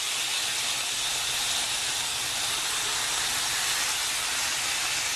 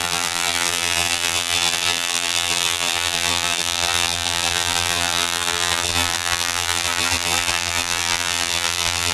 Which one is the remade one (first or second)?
second